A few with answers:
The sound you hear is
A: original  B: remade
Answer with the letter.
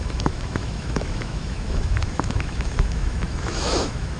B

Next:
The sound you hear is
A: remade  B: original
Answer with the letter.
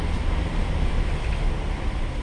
B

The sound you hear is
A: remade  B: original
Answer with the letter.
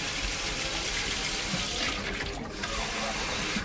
B